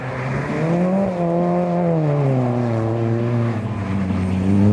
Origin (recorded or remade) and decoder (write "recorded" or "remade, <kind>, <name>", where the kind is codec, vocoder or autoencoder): recorded